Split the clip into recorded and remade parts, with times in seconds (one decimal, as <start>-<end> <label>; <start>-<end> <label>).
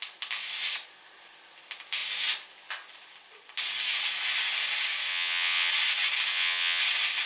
0.0-5.1 recorded; 5.1-5.7 remade; 5.7-6.3 recorded; 6.3-6.8 remade; 6.8-7.3 recorded